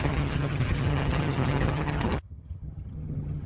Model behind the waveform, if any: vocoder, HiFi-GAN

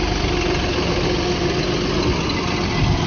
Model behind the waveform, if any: none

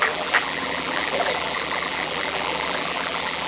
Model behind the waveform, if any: vocoder, BigVGAN v2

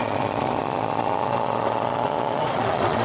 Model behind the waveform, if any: vocoder, Vocos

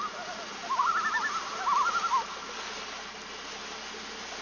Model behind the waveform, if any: none